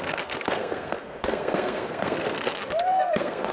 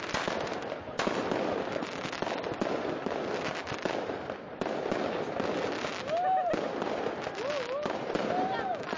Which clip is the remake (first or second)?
first